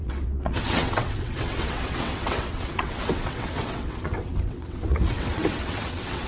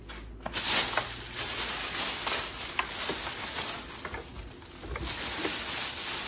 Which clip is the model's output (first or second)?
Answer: first